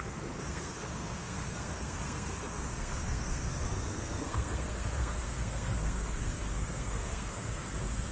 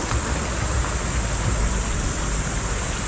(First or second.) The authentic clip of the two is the second